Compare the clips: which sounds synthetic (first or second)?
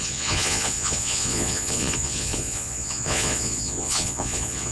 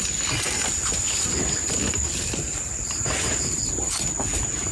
first